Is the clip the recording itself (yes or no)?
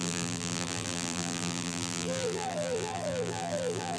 no